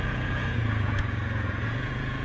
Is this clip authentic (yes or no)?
no